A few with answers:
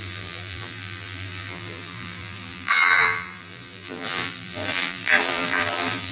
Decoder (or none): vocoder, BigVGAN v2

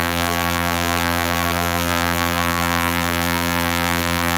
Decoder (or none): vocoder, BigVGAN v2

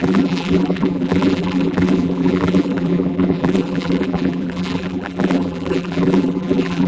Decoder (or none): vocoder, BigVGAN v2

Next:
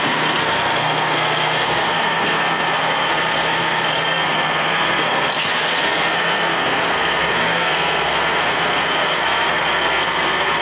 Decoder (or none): codec, SNAC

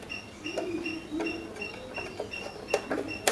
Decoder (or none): none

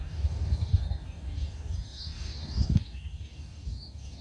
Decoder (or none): codec, DAC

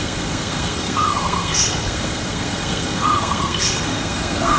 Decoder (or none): codec, SNAC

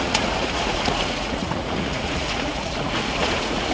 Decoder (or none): vocoder, Vocos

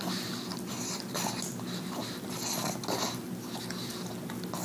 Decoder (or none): none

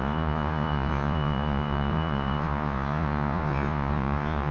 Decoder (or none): vocoder, Vocos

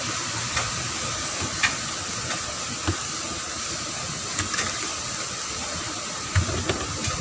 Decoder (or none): none